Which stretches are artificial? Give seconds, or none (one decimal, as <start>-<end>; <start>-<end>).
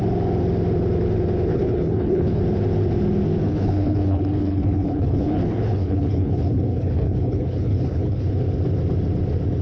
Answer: 1.5-2.4; 3.5-8.3